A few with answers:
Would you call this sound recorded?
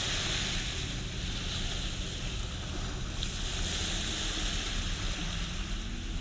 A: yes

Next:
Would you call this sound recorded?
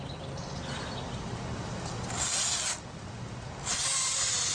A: yes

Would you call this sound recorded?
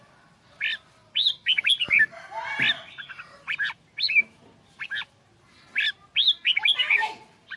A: yes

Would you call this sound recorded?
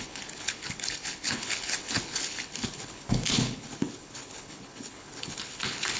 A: no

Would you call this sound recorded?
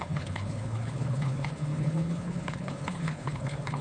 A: no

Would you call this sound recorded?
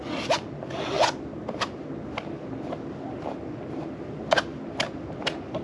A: yes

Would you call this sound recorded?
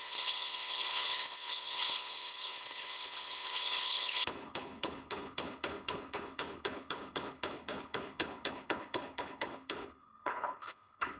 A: no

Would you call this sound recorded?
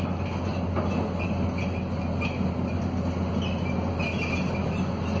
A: yes